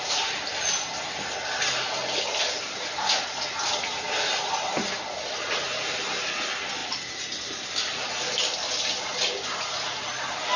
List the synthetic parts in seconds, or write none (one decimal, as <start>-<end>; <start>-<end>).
6.8-8.0